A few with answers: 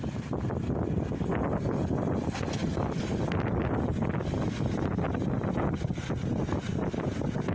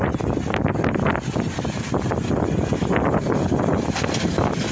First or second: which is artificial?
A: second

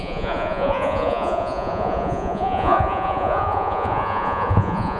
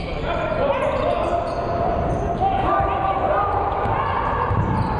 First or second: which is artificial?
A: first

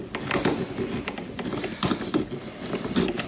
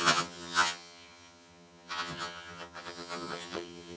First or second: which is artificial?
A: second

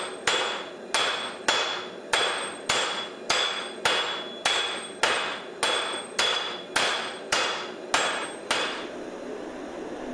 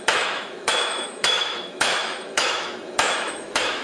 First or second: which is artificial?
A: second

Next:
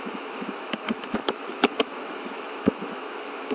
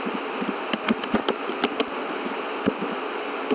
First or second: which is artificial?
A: first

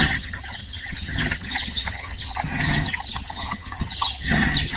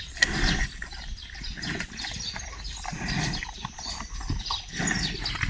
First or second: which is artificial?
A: first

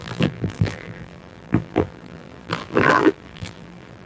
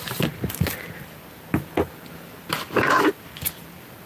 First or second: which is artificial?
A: first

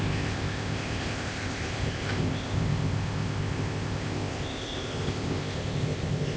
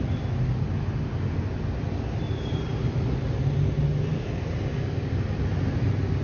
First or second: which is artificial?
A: first